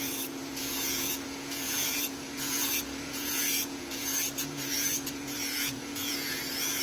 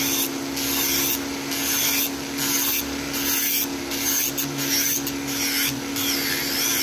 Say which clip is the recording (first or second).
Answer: second